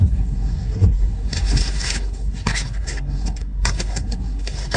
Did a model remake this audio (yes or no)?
yes